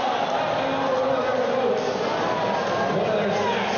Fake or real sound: real